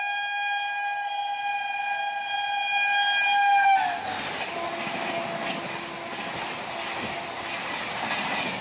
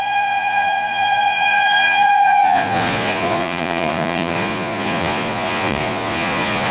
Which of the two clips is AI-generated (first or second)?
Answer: second